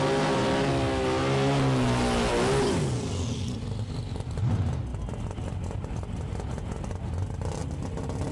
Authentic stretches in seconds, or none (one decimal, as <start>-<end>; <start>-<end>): 0.0-8.3